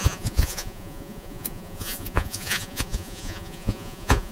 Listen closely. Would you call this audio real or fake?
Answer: fake